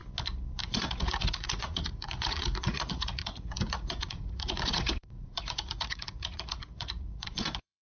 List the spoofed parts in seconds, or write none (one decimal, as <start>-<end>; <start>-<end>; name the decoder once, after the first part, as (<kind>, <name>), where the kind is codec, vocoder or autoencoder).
0.6-7.8 (vocoder, Vocos)